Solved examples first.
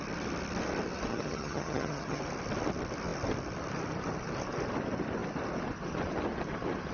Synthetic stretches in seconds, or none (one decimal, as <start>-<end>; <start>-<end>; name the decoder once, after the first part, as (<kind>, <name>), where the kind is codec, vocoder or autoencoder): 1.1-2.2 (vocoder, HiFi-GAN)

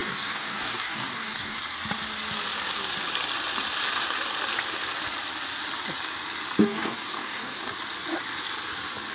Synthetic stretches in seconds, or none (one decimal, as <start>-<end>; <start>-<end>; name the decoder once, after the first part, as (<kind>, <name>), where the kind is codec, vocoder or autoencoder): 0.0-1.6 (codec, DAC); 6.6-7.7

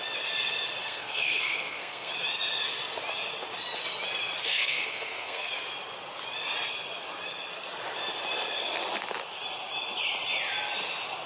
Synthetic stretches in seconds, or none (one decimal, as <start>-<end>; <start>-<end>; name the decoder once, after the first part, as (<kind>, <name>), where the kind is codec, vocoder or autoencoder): 0.8-2.1 (codec, SNAC); 4.4-5.5